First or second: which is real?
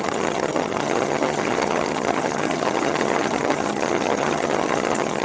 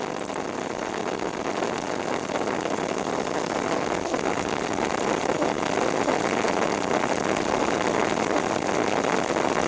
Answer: second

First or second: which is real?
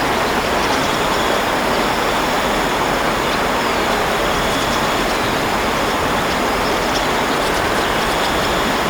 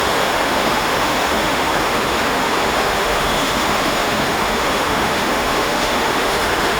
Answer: first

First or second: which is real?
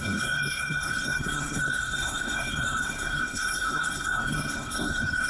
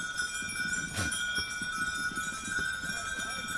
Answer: second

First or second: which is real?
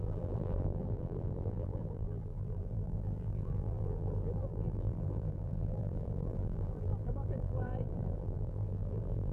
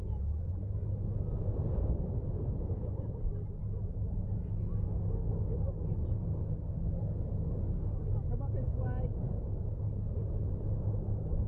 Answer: second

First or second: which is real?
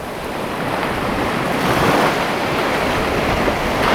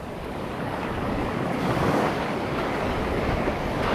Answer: first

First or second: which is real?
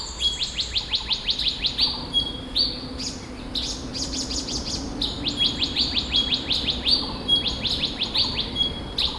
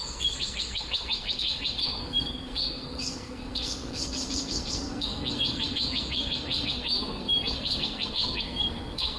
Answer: first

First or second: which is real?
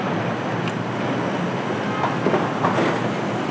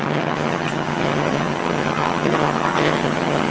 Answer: first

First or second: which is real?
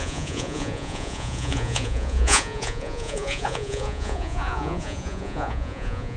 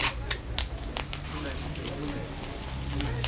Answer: second